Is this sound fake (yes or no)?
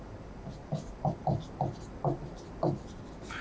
yes